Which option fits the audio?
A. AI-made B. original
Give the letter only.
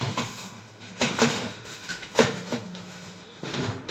A